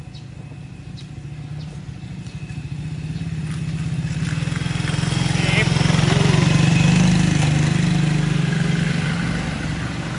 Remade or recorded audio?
recorded